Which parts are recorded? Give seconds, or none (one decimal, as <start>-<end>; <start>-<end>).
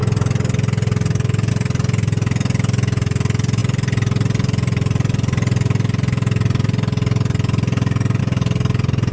0.0-9.1